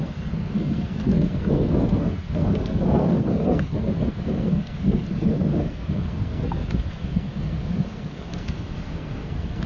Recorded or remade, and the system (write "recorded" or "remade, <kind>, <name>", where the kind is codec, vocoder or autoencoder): remade, codec, SNAC